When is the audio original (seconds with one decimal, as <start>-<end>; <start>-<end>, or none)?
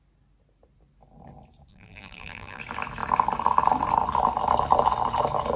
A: 0.0-1.7; 2.6-5.6